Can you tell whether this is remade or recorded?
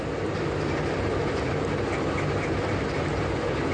recorded